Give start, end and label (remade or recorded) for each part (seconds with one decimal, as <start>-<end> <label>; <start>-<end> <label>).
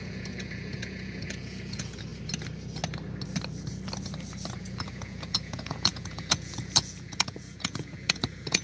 0.0-2.1 remade; 2.1-4.6 recorded; 4.6-8.6 remade